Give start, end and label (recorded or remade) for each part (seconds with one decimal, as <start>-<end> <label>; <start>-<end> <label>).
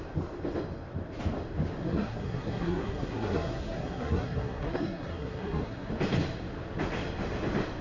0.0-1.8 recorded; 1.8-5.9 remade; 5.9-7.8 recorded